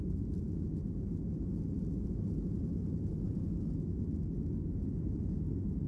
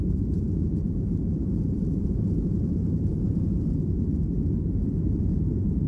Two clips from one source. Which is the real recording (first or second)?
first